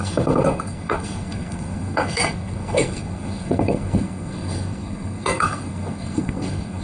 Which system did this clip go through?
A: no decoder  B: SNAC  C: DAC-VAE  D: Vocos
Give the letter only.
B